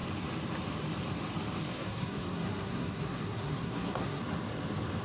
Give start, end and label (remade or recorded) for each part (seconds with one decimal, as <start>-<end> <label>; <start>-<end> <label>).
0.0-1.7 recorded; 1.7-4.2 remade; 4.2-5.0 recorded